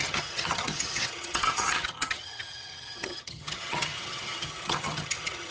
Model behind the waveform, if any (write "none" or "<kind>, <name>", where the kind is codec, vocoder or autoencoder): vocoder, HiFi-GAN